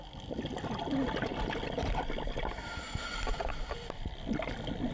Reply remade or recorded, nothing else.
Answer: recorded